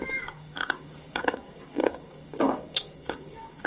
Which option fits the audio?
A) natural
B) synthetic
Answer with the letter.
B